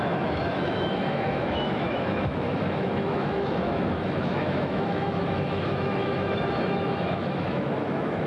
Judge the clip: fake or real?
fake